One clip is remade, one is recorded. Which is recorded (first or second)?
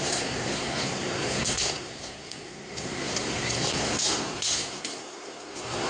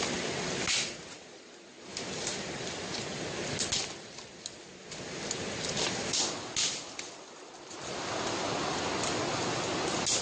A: second